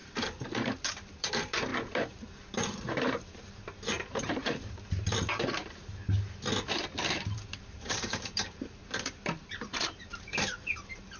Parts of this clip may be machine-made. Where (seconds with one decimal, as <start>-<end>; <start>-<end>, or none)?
0.0-6.0; 7.1-11.2